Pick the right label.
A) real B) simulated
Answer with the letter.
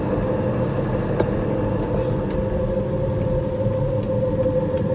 A